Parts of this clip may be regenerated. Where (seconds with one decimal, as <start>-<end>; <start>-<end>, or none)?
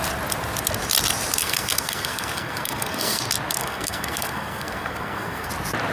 1.4-3.2; 3.6-5.5